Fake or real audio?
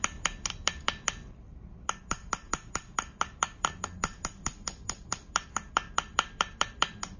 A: fake